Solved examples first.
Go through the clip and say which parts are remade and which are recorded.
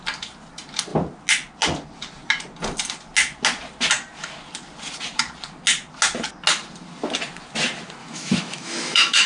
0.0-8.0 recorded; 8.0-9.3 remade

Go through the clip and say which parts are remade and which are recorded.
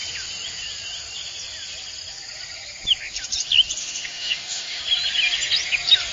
0.0-3.8 recorded; 3.8-4.8 remade; 4.8-6.1 recorded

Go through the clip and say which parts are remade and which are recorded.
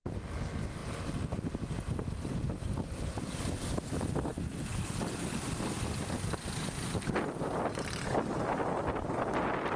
0.0-9.8 recorded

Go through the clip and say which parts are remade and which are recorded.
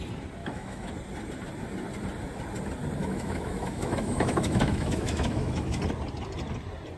0.0-0.4 recorded; 0.4-0.9 remade; 0.9-3.0 recorded; 3.0-5.8 remade; 5.8-7.0 recorded